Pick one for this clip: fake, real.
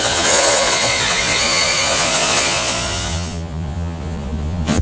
fake